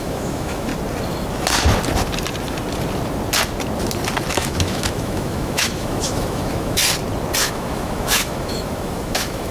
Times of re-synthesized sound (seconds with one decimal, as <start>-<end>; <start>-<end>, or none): 0.0-0.7; 4.3-6.8; 7.4-9.5

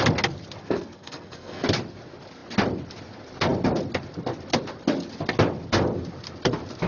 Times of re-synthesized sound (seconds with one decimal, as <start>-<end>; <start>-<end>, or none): 0.6-1.6

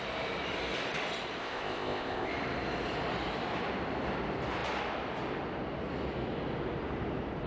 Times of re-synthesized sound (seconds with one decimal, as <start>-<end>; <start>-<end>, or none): 1.4-2.3

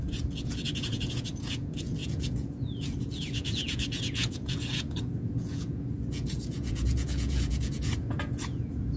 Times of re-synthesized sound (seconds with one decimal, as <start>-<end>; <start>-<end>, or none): 0.0-9.0

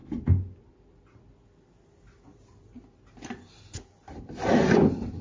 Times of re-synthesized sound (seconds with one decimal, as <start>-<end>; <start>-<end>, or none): none

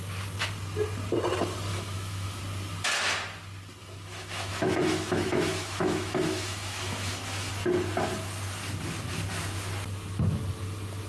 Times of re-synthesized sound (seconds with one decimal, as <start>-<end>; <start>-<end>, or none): 1.7-2.4; 3.8-7.5